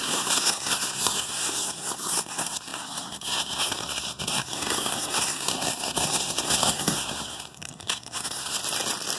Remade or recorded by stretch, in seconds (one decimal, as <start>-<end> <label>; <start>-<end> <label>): 0.0-8.6 remade; 8.6-9.2 recorded